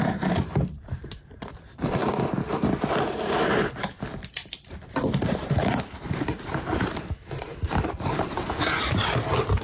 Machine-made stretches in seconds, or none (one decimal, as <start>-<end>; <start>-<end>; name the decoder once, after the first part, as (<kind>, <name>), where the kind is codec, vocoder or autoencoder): 0.0-2.0 (vocoder, BigVGAN v2); 3.1-9.6